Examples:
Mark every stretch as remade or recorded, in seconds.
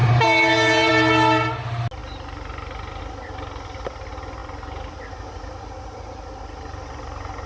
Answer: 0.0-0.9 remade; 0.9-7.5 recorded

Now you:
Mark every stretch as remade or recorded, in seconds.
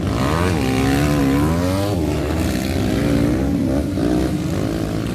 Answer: 0.0-5.1 recorded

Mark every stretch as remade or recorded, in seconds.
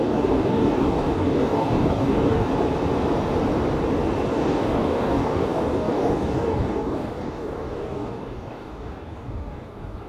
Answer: 0.0-2.5 remade; 2.5-4.3 recorded; 4.3-10.1 remade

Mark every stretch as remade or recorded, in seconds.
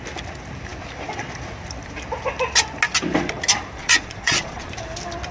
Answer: 0.0-3.8 recorded; 3.8-4.7 remade; 4.7-5.3 recorded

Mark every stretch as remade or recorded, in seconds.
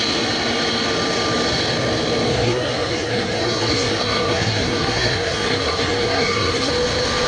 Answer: 0.0-2.3 recorded; 2.3-6.7 remade; 6.7-7.3 recorded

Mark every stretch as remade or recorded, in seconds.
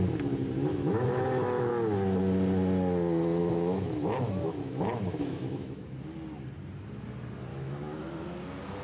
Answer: 0.0-0.7 recorded; 0.7-1.7 remade; 1.7-3.4 recorded; 3.4-5.8 remade; 5.8-7.5 recorded; 7.5-8.0 remade; 8.0-8.8 recorded